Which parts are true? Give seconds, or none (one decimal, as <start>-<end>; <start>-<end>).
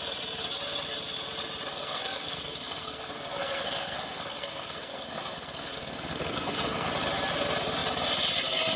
0.0-1.7; 6.9-8.8